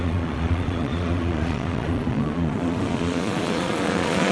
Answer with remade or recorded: remade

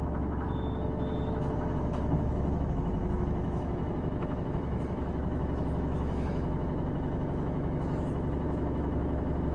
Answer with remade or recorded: remade